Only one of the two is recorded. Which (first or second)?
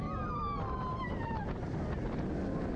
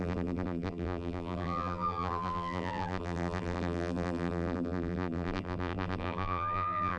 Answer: first